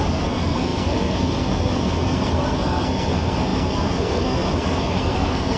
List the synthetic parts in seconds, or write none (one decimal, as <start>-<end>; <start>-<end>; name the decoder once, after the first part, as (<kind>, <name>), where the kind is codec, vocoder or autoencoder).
0.0-5.6 (codec, SNAC)